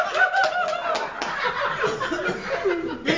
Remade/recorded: recorded